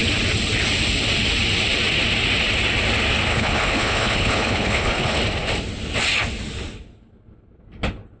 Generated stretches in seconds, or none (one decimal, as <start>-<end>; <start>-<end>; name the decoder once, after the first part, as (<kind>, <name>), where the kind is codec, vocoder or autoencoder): 3.3-5.2 (codec, HILCodec)